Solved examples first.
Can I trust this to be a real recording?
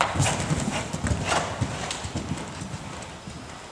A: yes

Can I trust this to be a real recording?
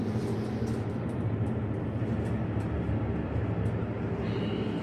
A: yes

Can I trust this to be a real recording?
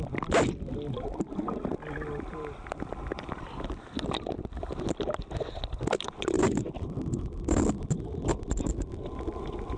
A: yes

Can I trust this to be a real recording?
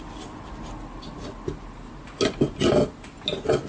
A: yes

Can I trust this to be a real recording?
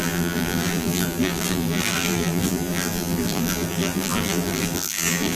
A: no